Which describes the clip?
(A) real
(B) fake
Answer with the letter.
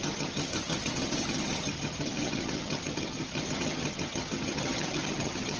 B